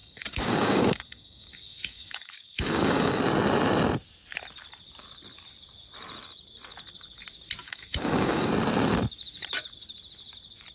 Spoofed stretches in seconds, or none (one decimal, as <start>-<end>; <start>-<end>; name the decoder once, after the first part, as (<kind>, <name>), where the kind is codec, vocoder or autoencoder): 0.0-3.2 (codec, DAC); 7.6-8.5